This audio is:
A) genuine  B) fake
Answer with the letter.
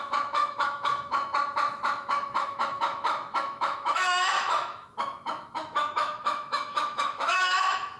B